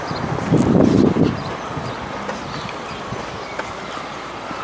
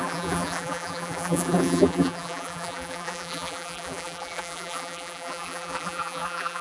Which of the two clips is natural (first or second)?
first